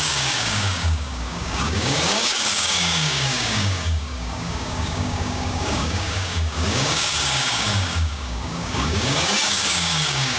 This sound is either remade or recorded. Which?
remade